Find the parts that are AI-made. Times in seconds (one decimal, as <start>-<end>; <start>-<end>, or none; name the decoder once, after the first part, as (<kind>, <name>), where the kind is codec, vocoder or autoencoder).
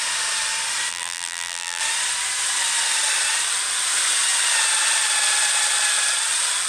0.9-1.8 (vocoder, BigVGAN v2)